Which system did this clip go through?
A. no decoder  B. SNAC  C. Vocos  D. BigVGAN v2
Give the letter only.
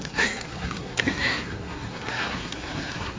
B